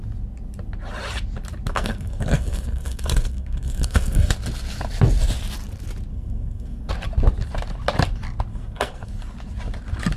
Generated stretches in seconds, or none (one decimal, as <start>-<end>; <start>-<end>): 1.7-4.3; 6.1-6.9; 8.5-9.1